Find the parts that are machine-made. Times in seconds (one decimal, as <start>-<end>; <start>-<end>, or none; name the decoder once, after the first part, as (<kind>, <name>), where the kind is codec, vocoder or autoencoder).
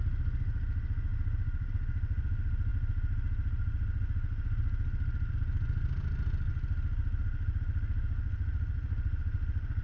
1.1-1.7 (vocoder, BigVGAN v2)